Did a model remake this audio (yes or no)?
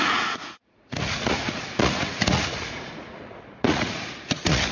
yes